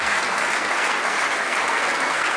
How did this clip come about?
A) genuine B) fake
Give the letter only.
B